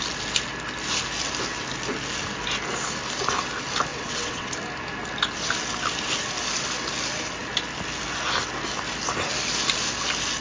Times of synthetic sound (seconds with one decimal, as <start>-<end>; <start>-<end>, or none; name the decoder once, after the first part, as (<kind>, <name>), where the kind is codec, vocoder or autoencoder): 3.9-4.5 (vocoder, WaveNeXt)